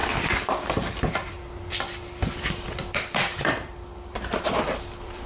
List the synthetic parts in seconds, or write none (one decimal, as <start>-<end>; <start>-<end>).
1.0-1.9; 2.4-5.3